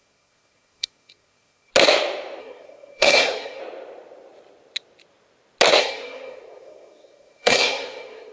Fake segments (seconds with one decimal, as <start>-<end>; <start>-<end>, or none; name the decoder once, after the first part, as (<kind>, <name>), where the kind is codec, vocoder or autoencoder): 0.0-1.7 (codec, SNAC); 2.4-3.6; 5.8-8.3